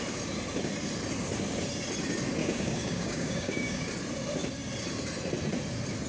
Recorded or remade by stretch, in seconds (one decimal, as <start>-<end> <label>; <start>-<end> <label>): 0.0-2.4 recorded; 2.4-3.8 remade; 3.8-6.1 recorded